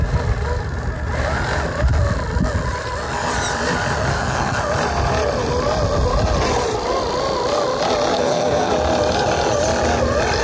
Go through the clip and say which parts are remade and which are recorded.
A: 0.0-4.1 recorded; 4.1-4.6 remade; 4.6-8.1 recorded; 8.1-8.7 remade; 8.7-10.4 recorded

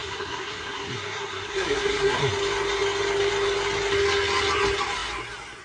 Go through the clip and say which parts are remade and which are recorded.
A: 0.0-2.3 remade; 2.3-5.6 recorded

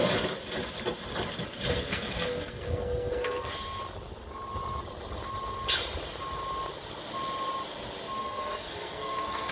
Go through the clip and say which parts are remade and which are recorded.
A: 0.0-1.7 recorded; 1.7-3.5 remade; 3.5-8.2 recorded; 8.2-9.5 remade

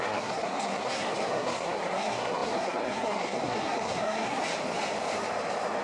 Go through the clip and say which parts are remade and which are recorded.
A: 0.0-4.4 remade; 4.4-5.8 recorded

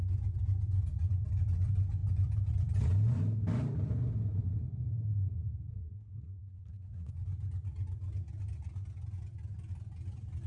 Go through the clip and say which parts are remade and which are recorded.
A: 0.0-5.7 recorded; 5.7-7.1 remade; 7.1-10.5 recorded

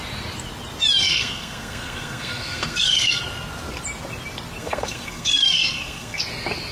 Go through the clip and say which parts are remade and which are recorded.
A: 0.0-1.0 recorded; 1.0-3.2 remade; 3.2-4.6 recorded; 4.6-6.2 remade; 6.2-6.7 recorded

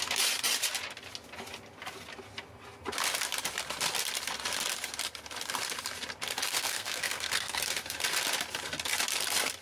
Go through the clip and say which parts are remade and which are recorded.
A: 0.0-6.5 recorded; 6.5-7.6 remade; 7.6-9.6 recorded

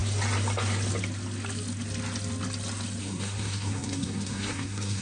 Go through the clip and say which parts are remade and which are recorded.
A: 0.0-3.0 recorded; 3.0-5.0 remade